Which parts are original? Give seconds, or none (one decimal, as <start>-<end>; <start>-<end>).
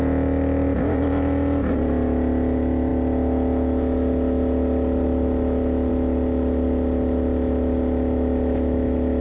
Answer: 0.0-9.2